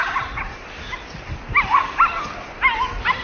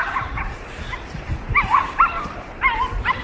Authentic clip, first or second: first